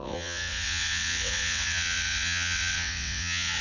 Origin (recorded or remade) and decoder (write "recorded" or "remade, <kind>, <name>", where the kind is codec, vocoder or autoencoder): remade, vocoder, WaveNeXt